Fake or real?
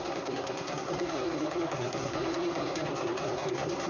fake